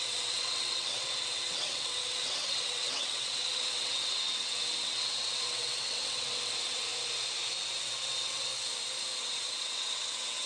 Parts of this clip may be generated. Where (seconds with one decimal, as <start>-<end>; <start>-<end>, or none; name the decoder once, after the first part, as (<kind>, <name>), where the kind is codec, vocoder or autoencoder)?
0.0-6.9 (vocoder, WaveNeXt); 7.7-8.5; 9.2-10.5